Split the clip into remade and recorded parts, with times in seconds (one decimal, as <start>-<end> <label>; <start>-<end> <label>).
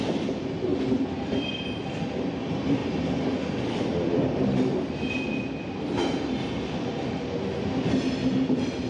0.0-0.7 recorded; 0.7-1.8 remade; 1.8-2.8 recorded; 2.8-4.9 remade; 4.9-8.9 recorded